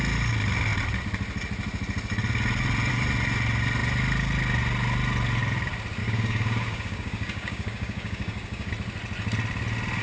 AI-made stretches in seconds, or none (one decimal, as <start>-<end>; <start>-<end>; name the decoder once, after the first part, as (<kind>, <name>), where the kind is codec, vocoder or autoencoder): 6.0-8.7 (codec, DAC)